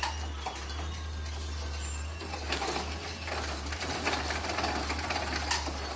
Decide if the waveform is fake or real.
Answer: real